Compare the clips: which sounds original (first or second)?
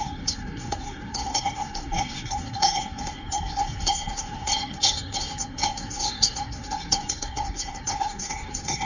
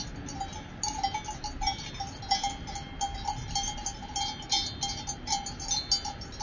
second